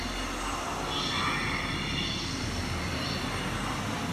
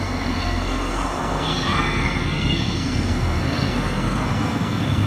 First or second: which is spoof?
second